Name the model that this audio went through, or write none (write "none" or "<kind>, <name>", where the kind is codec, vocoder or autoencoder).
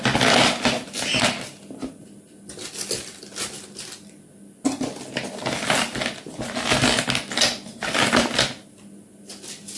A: none